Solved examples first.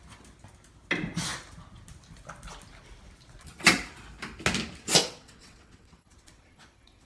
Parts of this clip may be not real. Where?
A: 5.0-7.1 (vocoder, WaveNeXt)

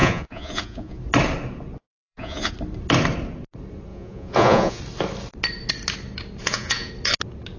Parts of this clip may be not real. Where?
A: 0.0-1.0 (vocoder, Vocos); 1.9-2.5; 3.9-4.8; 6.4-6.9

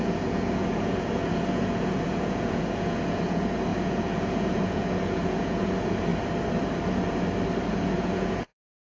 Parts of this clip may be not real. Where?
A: 0.0-6.1 (vocoder, Vocos); 7.6-8.9